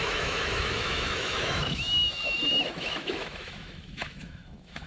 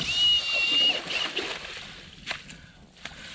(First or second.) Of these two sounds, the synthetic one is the first